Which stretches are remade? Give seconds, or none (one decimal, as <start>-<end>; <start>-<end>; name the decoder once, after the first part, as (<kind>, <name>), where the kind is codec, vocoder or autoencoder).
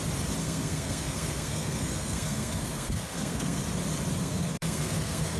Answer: 0.4-3.6 (codec, SNAC); 4.2-5.4